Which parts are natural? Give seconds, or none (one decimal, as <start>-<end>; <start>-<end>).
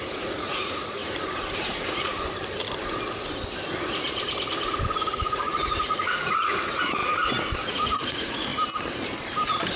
1.0-1.6; 2.1-5.0; 7.0-7.7; 8.5-9.8